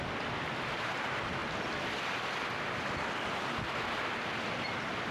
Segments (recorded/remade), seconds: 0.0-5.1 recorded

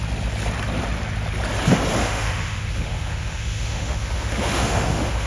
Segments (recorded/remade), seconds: 0.0-2.0 recorded; 2.0-5.3 remade

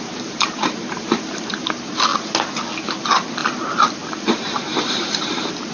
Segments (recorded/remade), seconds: 0.0-2.1 remade; 2.1-3.0 recorded; 3.0-3.4 remade; 3.4-3.9 recorded; 3.9-5.7 remade

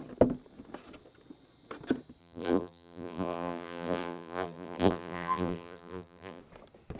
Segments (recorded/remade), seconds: 0.0-2.2 recorded; 2.2-6.4 remade; 6.4-7.0 recorded

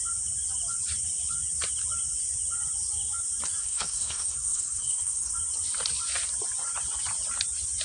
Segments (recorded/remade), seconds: 0.0-3.6 recorded; 3.6-5.3 remade; 5.3-7.8 recorded

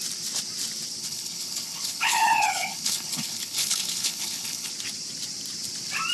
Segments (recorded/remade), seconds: 0.0-1.0 recorded; 1.0-4.7 remade; 4.7-6.1 recorded